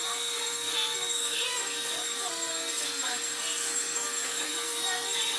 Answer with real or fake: fake